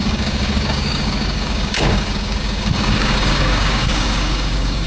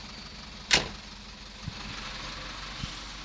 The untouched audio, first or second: second